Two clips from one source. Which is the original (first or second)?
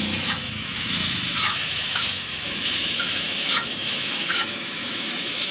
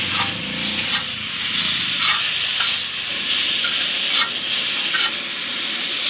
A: second